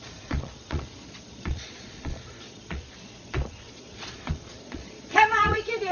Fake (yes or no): yes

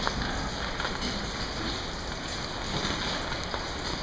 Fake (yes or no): no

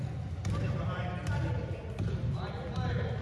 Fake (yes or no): no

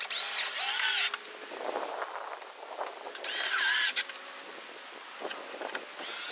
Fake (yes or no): no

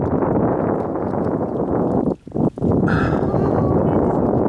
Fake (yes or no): yes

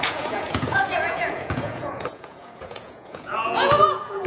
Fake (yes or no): yes